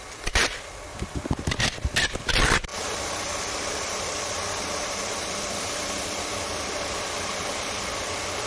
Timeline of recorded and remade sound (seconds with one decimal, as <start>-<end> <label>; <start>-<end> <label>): 0.0-0.4 remade; 0.4-1.9 recorded; 1.9-8.5 remade